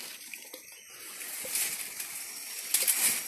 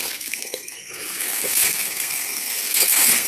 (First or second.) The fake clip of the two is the second